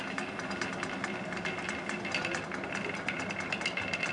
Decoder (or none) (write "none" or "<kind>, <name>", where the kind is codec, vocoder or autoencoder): none